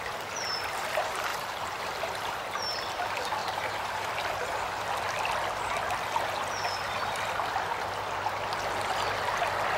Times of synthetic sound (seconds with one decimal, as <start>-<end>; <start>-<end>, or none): 1.3-1.8; 3.4-4.1